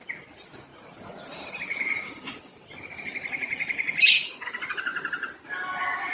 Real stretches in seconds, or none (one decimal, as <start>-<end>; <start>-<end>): 0.0-6.1